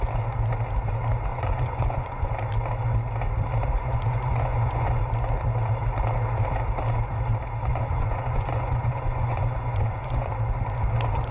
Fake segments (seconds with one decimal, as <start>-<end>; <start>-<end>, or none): 1.3-2.3; 3.7-5.0; 7.7-10.3